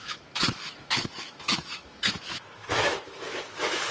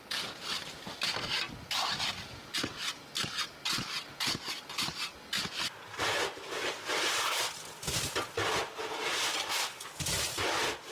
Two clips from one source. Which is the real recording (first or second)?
second